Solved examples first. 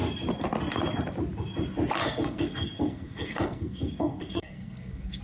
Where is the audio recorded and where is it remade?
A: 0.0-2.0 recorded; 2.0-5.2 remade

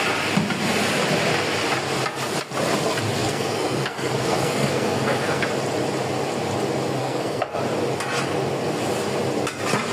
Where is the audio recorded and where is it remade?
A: 0.0-3.2 recorded; 3.2-5.5 remade; 5.5-7.0 recorded; 7.0-7.6 remade; 7.6-9.9 recorded

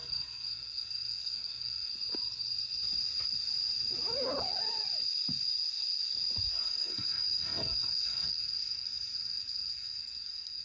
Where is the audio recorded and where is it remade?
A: 0.0-1.9 remade; 1.9-6.5 recorded; 6.5-10.6 remade

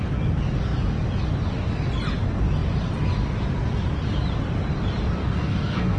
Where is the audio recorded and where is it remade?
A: 0.0-5.2 recorded; 5.2-6.0 remade

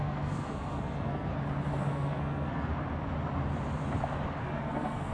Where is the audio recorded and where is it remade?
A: 0.0-1.3 remade; 1.3-1.8 recorded; 1.8-2.7 remade; 2.7-4.4 recorded; 4.4-5.1 remade

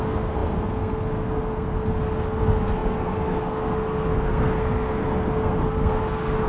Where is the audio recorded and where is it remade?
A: 0.0-6.5 remade

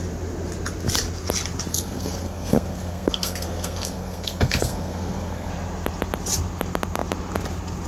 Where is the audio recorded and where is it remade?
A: 0.0-1.7 recorded; 1.7-5.5 remade; 5.5-7.9 recorded